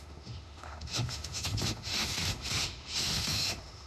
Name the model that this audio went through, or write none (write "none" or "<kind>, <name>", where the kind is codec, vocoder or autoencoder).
autoencoder, DAC-VAE